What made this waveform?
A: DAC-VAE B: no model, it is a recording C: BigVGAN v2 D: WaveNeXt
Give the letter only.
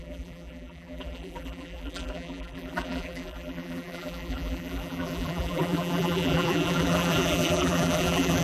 C